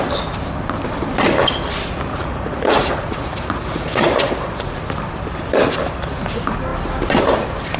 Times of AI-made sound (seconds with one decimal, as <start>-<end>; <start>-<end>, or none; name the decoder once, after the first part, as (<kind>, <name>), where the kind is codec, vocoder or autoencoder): 2.1-4.8 (vocoder, Vocos)